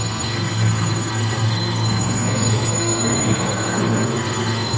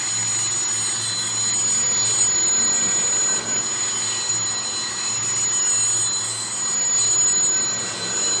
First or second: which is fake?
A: first